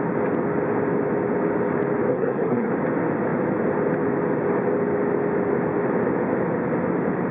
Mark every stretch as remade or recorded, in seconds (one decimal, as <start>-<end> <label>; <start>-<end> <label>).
0.0-2.1 recorded; 2.1-2.7 remade; 2.7-7.3 recorded